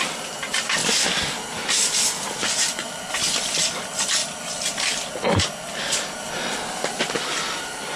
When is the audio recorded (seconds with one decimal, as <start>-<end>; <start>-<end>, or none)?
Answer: 0.0-8.0

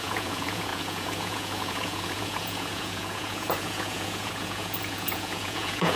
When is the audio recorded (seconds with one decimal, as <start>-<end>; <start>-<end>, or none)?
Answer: none

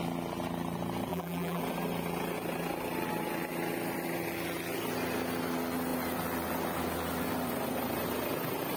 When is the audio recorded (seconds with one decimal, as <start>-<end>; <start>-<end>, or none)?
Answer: 0.0-1.1; 1.6-8.8

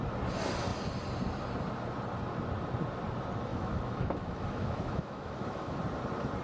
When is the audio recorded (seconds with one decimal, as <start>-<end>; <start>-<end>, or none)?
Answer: 0.0-3.5; 5.8-6.4

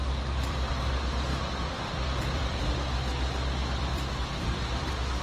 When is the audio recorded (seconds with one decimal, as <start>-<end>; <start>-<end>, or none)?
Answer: 0.7-1.3; 2.6-3.6

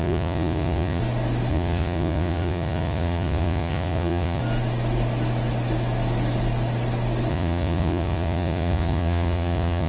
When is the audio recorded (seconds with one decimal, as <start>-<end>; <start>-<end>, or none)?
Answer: 1.0-1.5; 4.4-7.3

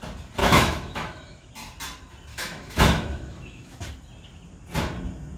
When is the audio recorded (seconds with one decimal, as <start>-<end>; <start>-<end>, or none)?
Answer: 0.0-0.4; 1.5-2.3; 3.8-5.4